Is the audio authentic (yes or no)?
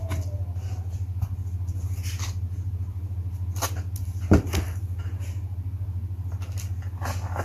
yes